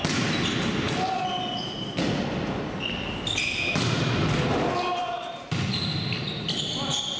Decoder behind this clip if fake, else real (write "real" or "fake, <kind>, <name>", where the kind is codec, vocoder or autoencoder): real